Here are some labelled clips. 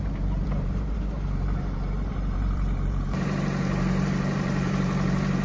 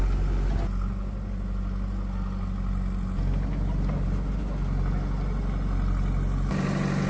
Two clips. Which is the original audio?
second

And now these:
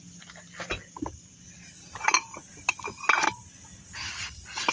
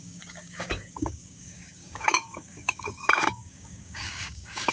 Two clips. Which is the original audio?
first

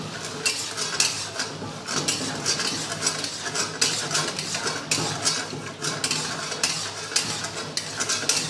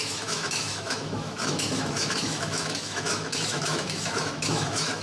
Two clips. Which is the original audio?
first